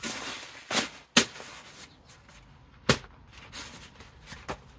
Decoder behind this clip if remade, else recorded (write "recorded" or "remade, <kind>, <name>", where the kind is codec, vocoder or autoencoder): recorded